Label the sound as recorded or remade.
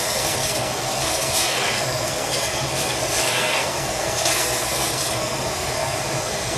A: remade